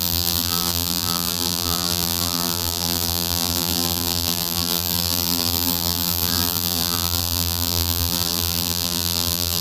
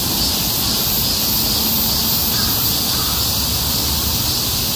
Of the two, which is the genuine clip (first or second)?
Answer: second